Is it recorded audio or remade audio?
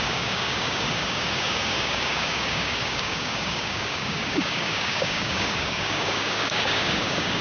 remade